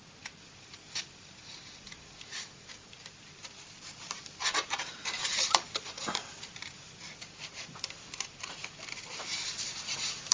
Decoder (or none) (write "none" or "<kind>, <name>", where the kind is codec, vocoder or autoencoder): vocoder, BigVGAN v2